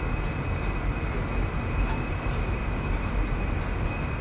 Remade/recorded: recorded